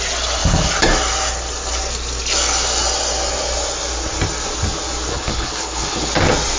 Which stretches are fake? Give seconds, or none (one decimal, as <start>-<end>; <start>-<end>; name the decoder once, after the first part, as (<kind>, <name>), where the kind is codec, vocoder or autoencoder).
5.1-6.1 (codec, HILCodec)